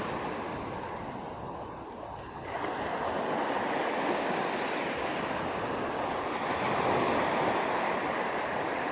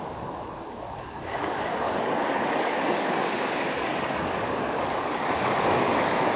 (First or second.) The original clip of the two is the first